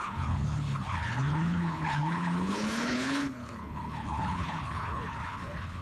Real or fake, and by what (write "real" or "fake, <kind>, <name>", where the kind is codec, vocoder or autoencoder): fake, codec, HILCodec